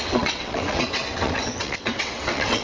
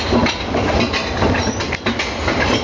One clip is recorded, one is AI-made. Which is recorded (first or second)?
second